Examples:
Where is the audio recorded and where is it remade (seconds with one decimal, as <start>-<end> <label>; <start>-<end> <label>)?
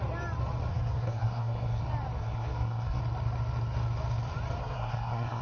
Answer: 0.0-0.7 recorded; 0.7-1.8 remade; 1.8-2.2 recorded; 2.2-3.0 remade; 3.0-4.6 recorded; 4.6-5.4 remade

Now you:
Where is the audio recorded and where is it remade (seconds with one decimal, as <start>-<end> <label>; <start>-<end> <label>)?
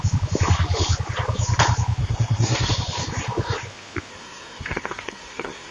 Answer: 0.0-2.0 recorded; 2.0-2.7 remade; 2.7-4.1 recorded; 4.1-5.7 remade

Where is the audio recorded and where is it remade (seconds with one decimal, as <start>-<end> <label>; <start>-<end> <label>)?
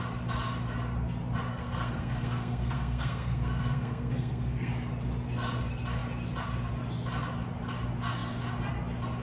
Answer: 0.0-1.5 recorded; 1.5-4.7 remade; 4.7-9.2 recorded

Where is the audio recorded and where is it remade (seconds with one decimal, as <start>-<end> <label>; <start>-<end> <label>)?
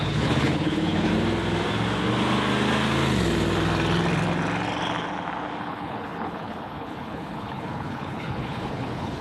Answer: 0.0-1.1 remade; 1.1-5.6 recorded; 5.6-9.2 remade